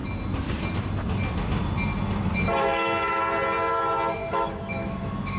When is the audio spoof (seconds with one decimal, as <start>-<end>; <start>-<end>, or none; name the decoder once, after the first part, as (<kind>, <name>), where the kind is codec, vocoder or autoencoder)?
2.6-3.2 (autoencoder, DAC-VAE); 4.2-5.4